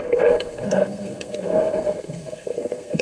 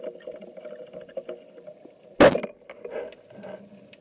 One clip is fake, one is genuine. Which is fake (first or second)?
first